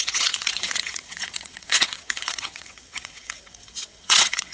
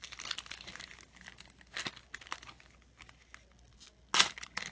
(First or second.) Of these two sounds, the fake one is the first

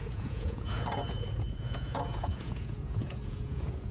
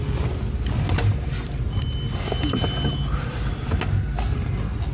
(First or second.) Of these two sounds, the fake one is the first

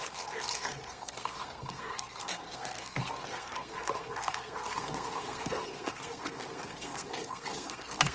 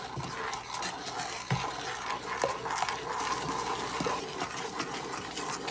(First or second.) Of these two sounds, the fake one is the first